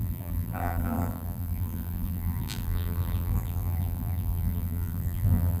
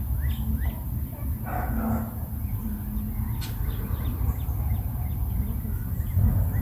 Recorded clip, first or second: second